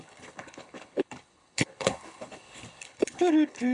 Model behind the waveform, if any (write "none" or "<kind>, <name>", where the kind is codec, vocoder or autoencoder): codec, HILCodec